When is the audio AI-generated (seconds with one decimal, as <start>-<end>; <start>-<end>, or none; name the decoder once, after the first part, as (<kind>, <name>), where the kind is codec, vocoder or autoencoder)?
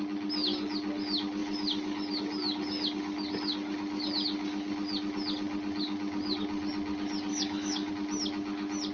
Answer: 7.3-7.9 (autoencoder, DAC-VAE)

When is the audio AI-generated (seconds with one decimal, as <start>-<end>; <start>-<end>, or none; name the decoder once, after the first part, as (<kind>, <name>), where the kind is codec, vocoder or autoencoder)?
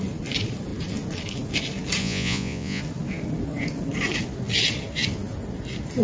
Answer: 2.0-2.8 (vocoder, Vocos)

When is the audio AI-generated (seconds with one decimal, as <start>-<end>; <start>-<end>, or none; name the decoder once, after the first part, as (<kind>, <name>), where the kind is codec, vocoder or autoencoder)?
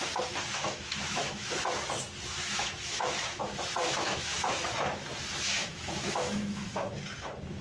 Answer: 0.5-1.5 (autoencoder, DAC-VAE); 2.3-3.4; 3.8-4.6; 5.6-6.9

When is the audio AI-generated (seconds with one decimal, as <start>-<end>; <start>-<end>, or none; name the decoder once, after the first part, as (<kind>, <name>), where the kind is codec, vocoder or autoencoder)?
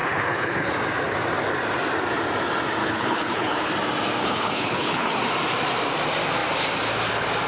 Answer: 0.0-0.7 (codec, HILCodec); 2.8-3.7; 4.2-5.2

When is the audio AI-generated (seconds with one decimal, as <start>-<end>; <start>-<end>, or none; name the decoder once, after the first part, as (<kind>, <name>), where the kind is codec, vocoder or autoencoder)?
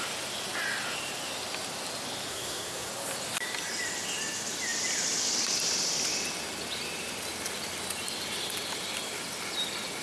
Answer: 2.3-2.9 (codec, SNAC)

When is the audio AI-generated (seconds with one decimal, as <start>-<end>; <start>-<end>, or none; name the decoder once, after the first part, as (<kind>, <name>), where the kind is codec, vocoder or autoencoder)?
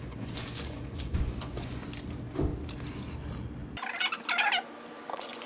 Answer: 0.0-1.8 (vocoder, Vocos); 5.1-5.5